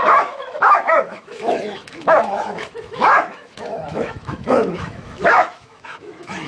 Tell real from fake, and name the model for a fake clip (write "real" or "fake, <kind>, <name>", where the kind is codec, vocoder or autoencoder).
fake, autoencoder, DAC-VAE